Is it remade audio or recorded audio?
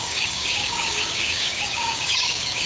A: remade